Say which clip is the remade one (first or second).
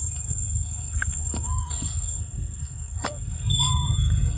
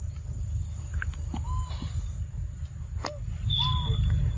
first